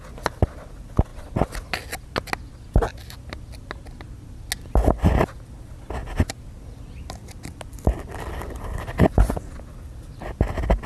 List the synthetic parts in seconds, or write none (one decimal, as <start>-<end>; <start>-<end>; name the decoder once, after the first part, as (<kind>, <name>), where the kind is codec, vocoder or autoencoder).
none